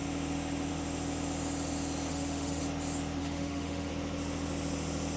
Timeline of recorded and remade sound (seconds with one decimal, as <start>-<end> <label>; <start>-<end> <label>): 0.0-2.1 recorded; 2.1-2.6 remade; 2.6-3.2 recorded; 3.2-3.9 remade; 3.9-5.2 recorded